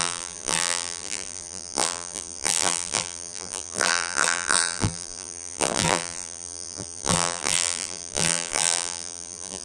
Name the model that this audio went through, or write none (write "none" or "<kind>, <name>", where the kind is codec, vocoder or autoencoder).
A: vocoder, BigVGAN v2